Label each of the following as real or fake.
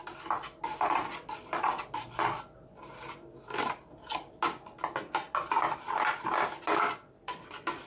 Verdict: real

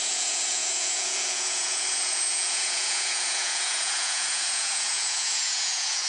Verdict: fake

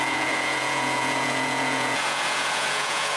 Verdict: fake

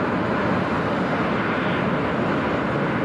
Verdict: real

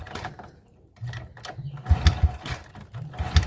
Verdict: real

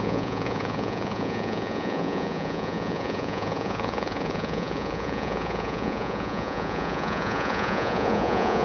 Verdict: fake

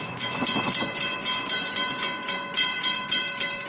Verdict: fake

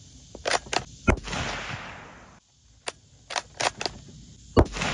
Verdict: real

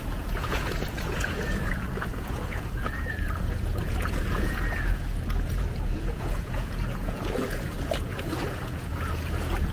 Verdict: fake